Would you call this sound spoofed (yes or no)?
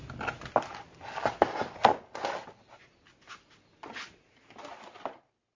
no